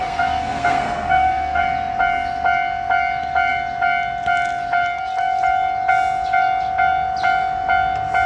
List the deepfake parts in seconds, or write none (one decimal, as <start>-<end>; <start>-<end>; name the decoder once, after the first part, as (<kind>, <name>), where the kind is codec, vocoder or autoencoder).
0.0-1.6 (codec, SNAC)